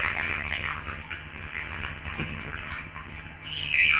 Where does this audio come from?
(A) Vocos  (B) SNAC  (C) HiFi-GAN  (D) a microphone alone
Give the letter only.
C